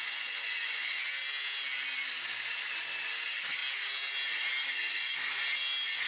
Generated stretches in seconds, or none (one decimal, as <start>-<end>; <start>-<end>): 0.0-1.0

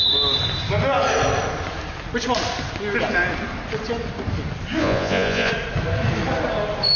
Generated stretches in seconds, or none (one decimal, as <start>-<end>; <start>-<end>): 4.8-5.5

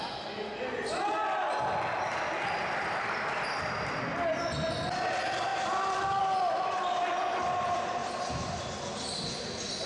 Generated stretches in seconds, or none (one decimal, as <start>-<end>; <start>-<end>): none

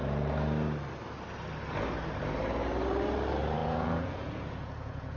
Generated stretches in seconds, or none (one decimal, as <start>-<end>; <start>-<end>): 3.6-5.2